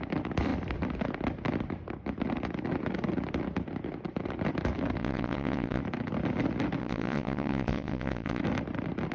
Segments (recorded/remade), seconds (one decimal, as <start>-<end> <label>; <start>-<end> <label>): 0.0-5.0 recorded; 5.0-5.8 remade; 5.8-6.8 recorded; 6.8-8.4 remade; 8.4-9.1 recorded